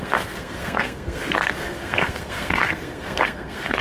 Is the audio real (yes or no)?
no